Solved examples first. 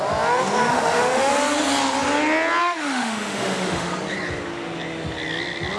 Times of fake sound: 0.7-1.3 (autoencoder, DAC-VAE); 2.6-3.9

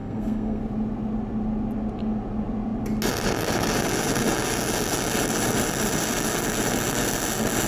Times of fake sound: 0.0-0.6 (codec, SNAC)